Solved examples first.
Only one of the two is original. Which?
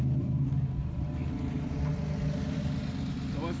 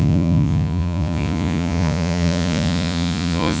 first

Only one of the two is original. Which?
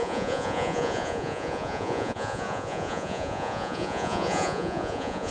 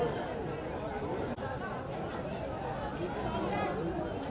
second